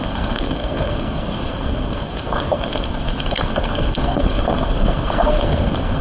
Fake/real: fake